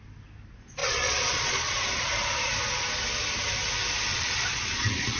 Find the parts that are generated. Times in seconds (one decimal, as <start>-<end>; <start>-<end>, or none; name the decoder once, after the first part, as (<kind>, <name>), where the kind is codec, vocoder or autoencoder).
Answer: 0.8-2.1 (vocoder, Vocos); 4.1-5.2